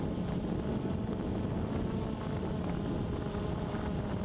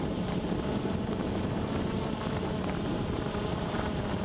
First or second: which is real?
first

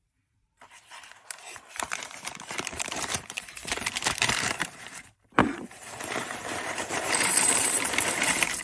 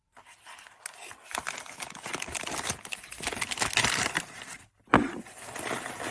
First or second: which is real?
second